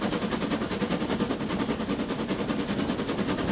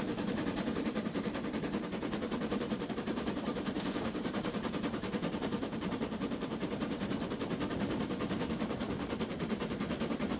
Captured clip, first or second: first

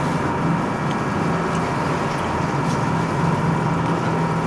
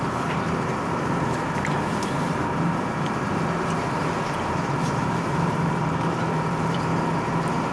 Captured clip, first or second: first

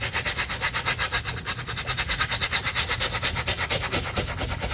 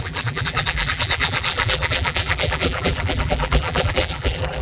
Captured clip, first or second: first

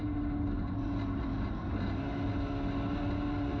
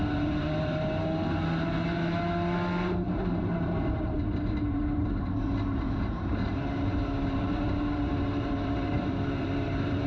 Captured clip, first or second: first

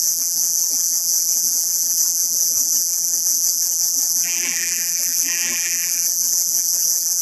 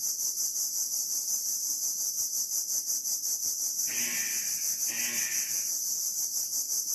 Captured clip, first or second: second